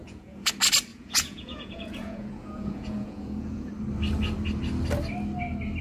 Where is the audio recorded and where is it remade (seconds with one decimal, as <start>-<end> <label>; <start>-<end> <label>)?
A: 0.0-0.5 remade; 0.5-0.9 recorded; 0.9-3.7 remade; 3.7-5.8 recorded